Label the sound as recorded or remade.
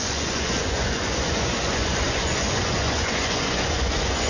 remade